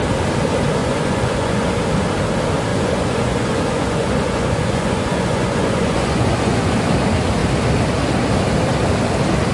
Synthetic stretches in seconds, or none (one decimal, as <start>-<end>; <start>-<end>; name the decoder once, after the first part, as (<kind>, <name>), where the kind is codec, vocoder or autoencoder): 0.8-1.8 (vocoder, Vocos); 2.7-6.8